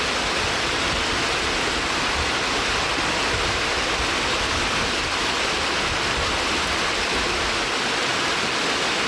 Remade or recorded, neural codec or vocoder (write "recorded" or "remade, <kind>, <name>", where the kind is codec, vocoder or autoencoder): recorded